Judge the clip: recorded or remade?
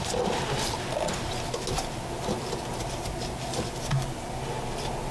recorded